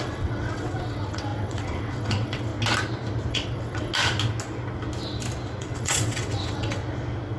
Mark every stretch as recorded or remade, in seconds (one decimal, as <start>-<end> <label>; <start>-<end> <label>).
0.0-2.5 remade; 2.5-3.3 recorded; 3.3-3.9 remade; 3.9-5.6 recorded; 5.6-6.8 remade; 6.8-7.4 recorded